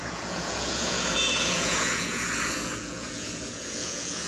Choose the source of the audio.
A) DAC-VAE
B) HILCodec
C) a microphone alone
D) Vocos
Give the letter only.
D